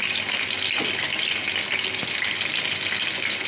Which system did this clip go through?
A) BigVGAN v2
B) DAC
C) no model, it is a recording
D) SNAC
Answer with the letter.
C